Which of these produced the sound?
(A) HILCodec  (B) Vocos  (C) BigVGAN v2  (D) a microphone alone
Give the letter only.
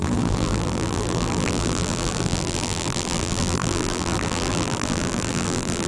C